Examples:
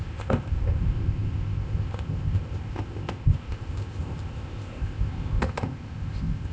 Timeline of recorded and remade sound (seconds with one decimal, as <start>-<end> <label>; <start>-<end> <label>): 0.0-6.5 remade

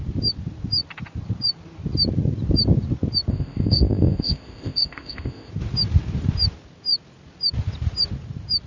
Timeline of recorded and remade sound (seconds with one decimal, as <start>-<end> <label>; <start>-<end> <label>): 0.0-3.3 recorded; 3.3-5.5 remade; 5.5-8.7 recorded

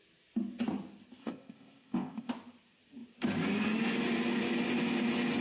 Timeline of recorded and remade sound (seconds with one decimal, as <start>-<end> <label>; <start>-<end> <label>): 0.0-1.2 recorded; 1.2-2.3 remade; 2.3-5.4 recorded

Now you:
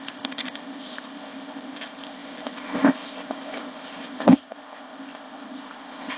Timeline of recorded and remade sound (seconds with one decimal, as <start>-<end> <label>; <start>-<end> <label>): 0.0-6.2 remade

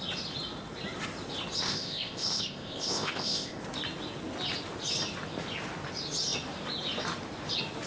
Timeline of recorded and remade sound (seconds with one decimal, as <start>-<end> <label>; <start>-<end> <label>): 0.0-1.6 recorded; 1.6-3.6 remade; 3.6-7.9 recorded

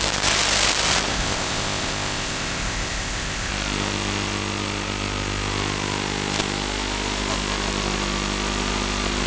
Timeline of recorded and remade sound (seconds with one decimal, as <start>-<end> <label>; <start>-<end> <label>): 0.0-1.1 recorded; 1.1-3.5 remade; 3.5-9.3 recorded

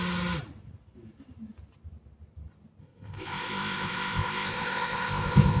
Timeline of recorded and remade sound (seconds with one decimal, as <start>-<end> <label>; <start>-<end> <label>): 0.0-2.8 recorded; 2.8-5.6 remade

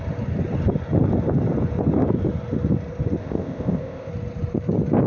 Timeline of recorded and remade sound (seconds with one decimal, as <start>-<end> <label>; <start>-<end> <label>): 0.0-3.2 recorded; 3.2-4.1 remade; 4.1-5.1 recorded